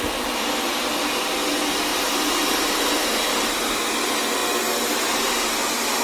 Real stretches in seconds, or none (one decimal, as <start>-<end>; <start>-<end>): 0.0-1.9; 3.8-6.0